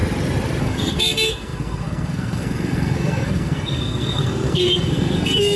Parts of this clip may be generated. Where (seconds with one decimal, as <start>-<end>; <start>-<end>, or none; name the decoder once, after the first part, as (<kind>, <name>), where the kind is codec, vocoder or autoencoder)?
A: 0.6-5.6 (codec, SNAC)